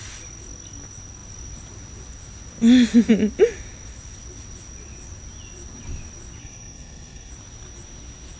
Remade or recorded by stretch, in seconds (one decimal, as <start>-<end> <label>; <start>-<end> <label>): 0.0-6.4 recorded; 6.4-7.3 remade; 7.3-8.4 recorded